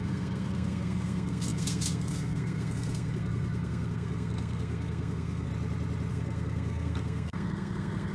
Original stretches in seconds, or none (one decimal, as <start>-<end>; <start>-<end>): 5.5-6.1